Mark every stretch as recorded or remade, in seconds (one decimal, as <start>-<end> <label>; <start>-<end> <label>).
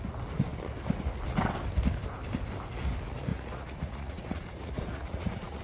0.0-3.3 recorded; 3.3-5.6 remade